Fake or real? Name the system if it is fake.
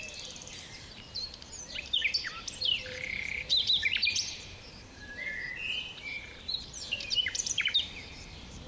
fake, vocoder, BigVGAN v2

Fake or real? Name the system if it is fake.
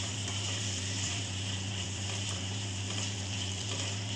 fake, vocoder, BigVGAN v2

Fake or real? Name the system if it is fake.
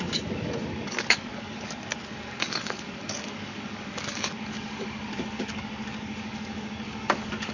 fake, codec, DAC